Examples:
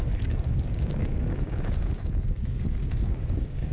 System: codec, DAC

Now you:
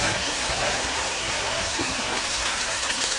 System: codec, SNAC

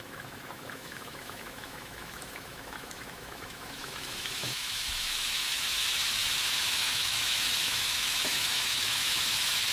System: autoencoder, DAC-VAE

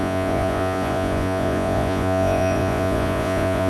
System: vocoder, Vocos